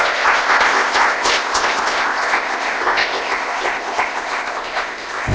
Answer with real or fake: fake